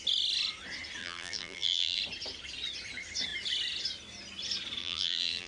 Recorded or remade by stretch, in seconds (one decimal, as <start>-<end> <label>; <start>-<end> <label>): 0.0-1.0 recorded; 1.0-2.0 remade; 2.0-4.8 recorded; 4.8-5.5 remade